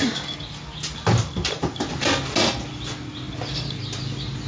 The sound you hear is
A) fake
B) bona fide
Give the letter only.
B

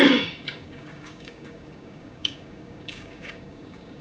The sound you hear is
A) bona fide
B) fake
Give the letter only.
B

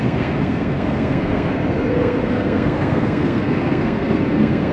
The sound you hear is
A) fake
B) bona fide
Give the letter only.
A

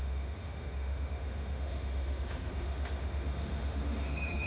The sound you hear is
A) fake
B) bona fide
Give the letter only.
A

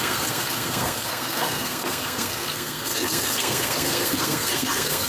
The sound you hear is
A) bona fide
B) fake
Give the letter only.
B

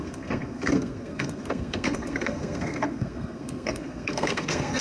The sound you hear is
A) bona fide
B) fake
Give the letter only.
B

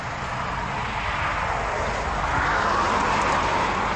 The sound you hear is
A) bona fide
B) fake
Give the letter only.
A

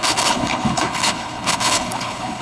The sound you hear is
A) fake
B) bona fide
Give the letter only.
A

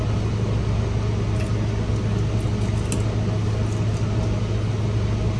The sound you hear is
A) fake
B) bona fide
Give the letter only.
B